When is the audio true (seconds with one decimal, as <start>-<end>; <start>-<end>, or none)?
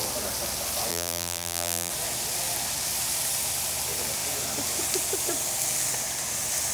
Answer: 0.0-0.9; 1.9-6.7